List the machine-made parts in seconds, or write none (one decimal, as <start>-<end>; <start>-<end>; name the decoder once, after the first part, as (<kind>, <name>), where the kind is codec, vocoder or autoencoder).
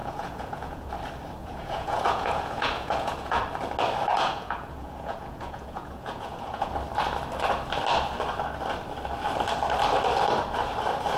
0.0-0.9 (vocoder, Vocos); 1.4-3.4; 4.1-6.7